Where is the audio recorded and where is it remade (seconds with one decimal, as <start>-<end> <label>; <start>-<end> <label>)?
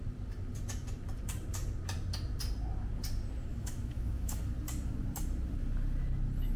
0.0-3.5 recorded; 3.5-4.4 remade; 4.4-6.6 recorded